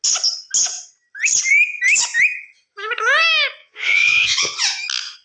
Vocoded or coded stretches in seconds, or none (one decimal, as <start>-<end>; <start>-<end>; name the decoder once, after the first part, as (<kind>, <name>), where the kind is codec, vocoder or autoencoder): 3.6-4.6 (vocoder, Vocos)